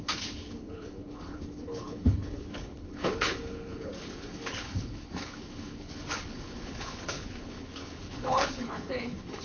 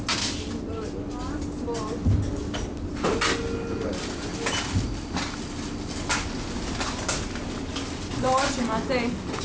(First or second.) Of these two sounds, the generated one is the first